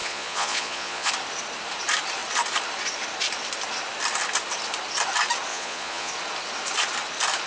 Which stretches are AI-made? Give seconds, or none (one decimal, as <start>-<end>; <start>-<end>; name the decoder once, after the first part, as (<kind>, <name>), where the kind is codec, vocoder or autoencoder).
0.0-1.1 (vocoder, Vocos); 5.5-6.1